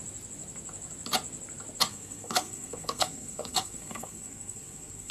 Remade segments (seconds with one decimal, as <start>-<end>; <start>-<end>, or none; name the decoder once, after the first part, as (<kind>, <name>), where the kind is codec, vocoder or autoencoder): 1.9-5.1 (codec, SNAC)